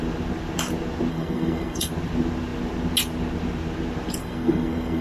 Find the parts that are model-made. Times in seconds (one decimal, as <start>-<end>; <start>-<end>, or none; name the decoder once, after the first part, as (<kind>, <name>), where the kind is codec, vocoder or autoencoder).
1.1-1.9 (codec, SNAC); 4.2-5.0